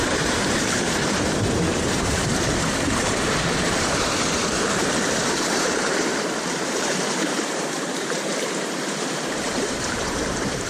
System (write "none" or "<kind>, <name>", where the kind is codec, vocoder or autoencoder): vocoder, BigVGAN v2